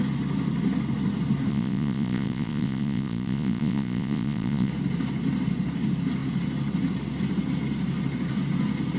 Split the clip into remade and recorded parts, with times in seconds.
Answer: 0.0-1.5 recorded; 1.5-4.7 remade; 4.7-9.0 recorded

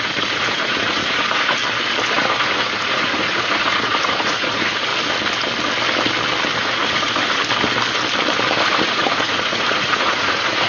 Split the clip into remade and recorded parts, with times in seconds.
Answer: 0.0-1.6 remade; 1.6-2.1 recorded; 2.1-4.9 remade; 4.9-6.6 recorded; 6.6-7.4 remade; 7.4-8.6 recorded; 8.6-10.7 remade

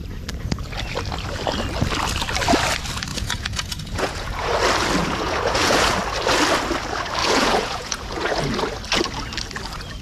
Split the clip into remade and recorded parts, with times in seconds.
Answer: 0.0-3.1 recorded; 3.1-4.5 remade; 4.5-5.0 recorded; 5.0-6.0 remade; 6.0-7.2 recorded; 7.2-8.4 remade; 8.4-10.0 recorded

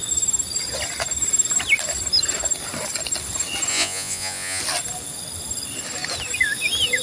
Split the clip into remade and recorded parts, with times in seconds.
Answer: 0.0-3.7 recorded; 3.7-4.6 remade; 4.6-7.0 recorded

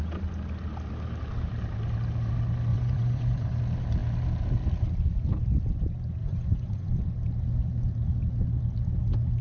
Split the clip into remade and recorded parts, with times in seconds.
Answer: 0.0-2.7 recorded; 2.7-3.6 remade; 3.6-6.2 recorded; 6.2-7.0 remade; 7.0-9.4 recorded

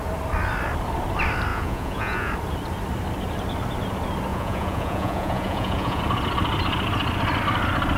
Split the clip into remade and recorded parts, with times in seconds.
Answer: 0.0-1.5 recorded; 1.5-2.3 remade; 2.3-4.3 recorded; 4.3-6.0 remade; 6.0-8.0 recorded

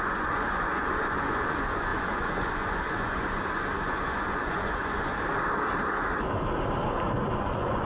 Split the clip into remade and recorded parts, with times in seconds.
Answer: 0.0-5.1 remade; 5.1-7.3 recorded; 7.3-7.9 remade

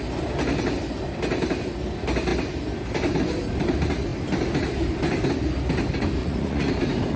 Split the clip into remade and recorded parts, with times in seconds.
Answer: 0.0-6.2 recorded; 6.2-6.7 remade; 6.7-7.2 recorded